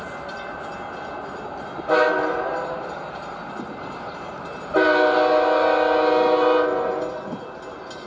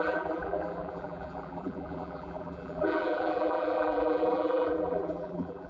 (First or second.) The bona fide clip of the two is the first